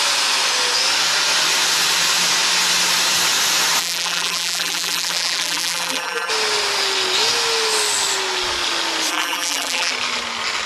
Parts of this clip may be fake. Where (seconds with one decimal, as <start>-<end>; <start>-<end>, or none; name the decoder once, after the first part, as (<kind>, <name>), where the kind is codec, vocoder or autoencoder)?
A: 3.8-6.3 (vocoder, BigVGAN v2); 9.1-9.9